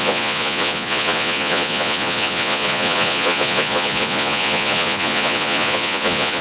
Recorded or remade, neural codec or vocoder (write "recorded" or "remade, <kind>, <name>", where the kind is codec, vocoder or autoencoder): remade, vocoder, Vocos